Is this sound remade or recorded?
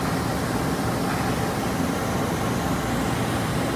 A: recorded